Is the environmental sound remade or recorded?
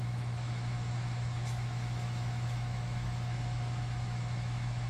remade